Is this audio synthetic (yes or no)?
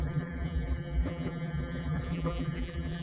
yes